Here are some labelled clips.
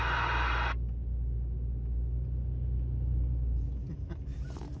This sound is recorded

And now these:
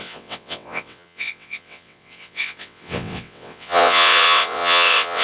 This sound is remade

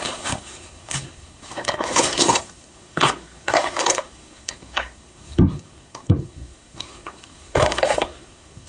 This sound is remade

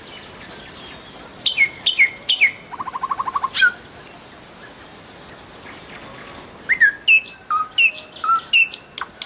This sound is recorded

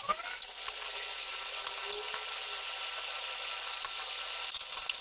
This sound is recorded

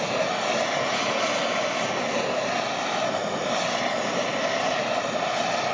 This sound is recorded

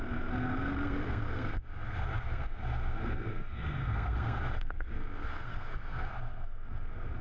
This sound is remade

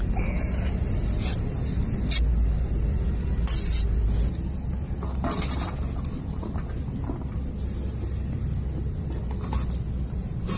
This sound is recorded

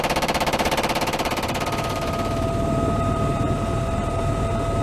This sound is remade